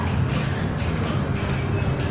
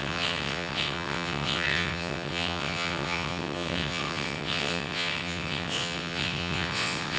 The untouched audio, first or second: first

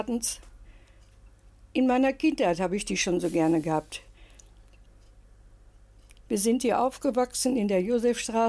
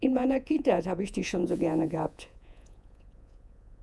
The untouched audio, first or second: first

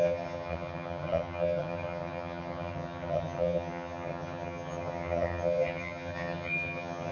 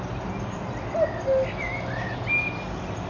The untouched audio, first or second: second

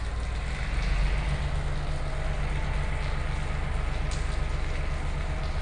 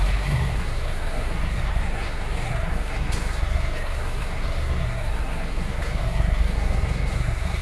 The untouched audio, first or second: first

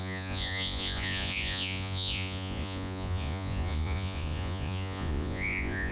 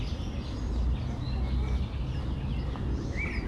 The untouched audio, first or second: second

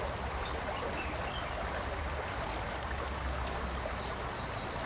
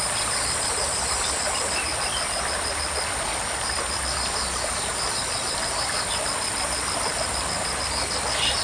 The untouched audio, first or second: first